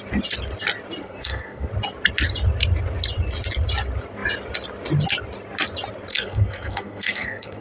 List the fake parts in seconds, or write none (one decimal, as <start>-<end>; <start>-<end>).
1.0-1.7; 6.1-7.6